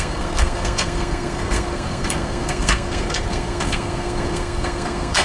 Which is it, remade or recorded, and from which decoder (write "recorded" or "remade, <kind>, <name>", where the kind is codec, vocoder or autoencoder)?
remade, codec, SNAC